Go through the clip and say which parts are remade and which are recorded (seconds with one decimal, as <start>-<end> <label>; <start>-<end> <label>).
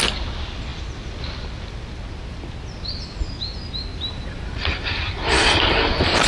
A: 0.0-3.9 recorded; 3.9-5.5 remade; 5.5-6.3 recorded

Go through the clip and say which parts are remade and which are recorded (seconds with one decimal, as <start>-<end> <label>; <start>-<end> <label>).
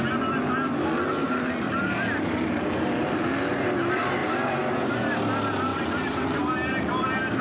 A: 0.0-1.2 recorded; 1.2-3.2 remade; 3.2-4.2 recorded; 4.2-4.9 remade; 4.9-5.7 recorded; 5.7-6.4 remade; 6.4-7.4 recorded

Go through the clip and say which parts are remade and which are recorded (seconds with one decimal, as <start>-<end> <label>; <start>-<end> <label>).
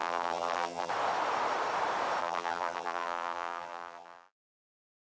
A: 0.0-0.9 remade; 0.9-2.2 recorded; 2.2-5.0 remade